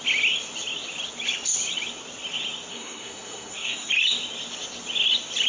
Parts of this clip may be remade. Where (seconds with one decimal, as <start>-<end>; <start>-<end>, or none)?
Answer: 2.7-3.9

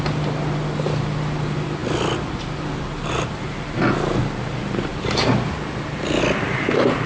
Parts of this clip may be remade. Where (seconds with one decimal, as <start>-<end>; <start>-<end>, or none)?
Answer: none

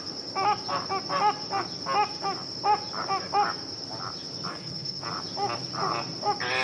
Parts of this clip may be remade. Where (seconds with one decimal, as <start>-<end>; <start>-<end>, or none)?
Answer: 4.5-5.0

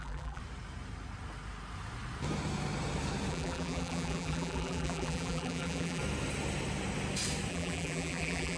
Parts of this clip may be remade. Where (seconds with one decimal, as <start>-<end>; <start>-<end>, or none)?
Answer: 0.0-0.4; 3.3-6.0; 7.5-8.6